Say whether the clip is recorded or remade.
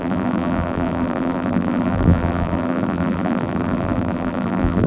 remade